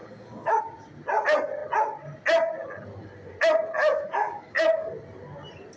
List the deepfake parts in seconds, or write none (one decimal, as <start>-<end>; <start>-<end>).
0.0-0.6; 3.8-4.9